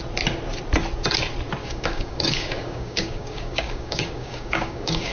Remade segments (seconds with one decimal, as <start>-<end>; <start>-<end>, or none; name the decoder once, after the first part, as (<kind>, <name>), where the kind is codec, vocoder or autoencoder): 1.6-5.1 (codec, DAC)